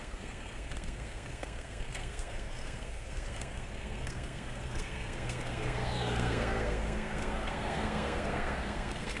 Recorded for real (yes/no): no